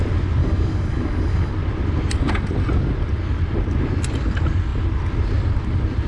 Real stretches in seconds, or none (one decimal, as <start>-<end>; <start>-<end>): 0.0-0.4; 1.5-6.1